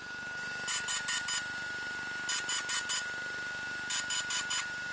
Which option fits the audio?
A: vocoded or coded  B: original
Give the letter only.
B